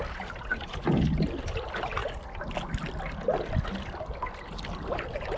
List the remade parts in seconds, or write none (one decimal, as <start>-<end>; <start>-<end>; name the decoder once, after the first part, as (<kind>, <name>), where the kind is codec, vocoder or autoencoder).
none